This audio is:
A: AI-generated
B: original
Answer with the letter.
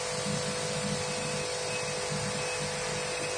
B